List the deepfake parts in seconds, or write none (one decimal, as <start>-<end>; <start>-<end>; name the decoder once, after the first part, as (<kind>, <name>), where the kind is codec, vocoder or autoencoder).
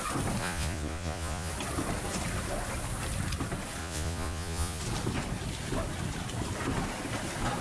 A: 0.4-1.5 (vocoder, Vocos); 3.8-4.8